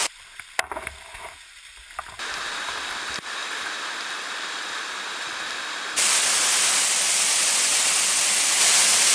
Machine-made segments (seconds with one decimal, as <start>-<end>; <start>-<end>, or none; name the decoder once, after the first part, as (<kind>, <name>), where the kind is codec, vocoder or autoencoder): none